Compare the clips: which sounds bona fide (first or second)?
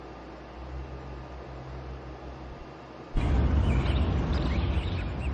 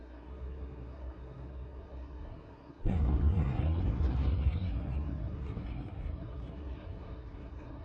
first